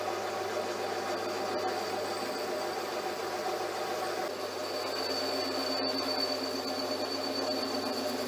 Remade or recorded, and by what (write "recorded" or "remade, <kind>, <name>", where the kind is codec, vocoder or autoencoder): recorded